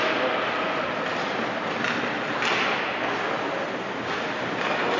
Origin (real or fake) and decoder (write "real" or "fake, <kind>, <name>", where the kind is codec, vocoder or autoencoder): real